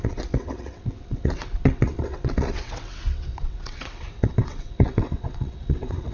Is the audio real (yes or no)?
no